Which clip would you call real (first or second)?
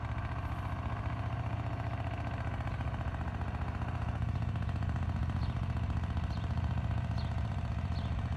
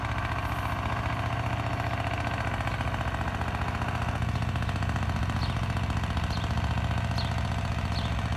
second